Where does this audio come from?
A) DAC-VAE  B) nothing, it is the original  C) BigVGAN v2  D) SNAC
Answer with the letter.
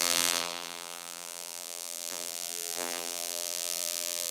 C